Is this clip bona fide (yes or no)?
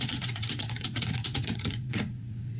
no